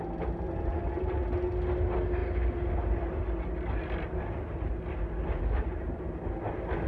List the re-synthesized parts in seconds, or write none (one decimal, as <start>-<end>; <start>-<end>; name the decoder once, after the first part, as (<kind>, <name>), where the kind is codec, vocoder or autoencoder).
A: none